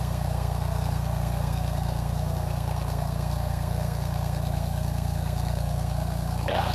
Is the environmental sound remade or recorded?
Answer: remade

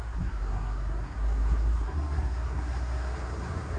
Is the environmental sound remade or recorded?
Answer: remade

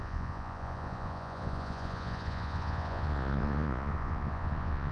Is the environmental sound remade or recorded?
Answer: remade